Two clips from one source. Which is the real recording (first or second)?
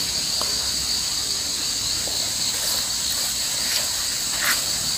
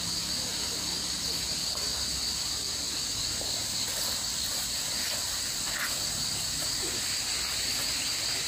first